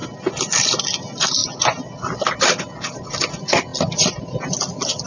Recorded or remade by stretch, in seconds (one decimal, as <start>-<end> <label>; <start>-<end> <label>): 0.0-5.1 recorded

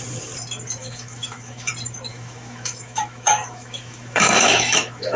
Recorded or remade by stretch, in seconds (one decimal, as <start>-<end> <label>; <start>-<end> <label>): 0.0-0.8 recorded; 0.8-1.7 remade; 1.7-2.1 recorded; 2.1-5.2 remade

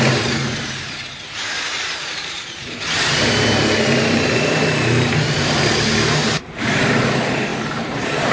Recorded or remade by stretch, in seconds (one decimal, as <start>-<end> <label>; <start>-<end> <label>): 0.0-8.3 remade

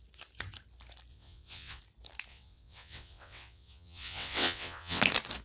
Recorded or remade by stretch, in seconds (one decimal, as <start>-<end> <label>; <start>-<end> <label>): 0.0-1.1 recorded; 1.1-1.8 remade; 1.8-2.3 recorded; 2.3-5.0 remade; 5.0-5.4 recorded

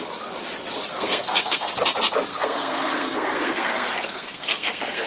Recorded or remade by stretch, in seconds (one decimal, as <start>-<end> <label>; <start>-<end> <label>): 0.0-0.9 recorded; 0.9-1.7 remade; 1.7-2.3 recorded; 2.3-5.1 remade